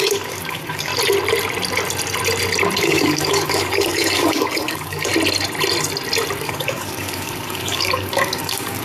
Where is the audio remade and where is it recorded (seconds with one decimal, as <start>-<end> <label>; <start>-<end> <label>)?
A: 0.0-0.9 remade; 0.9-2.8 recorded; 2.8-5.1 remade; 5.1-6.4 recorded; 6.4-8.8 remade